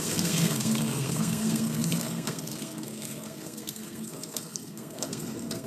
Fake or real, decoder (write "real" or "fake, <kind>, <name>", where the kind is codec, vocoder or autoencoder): fake, codec, SNAC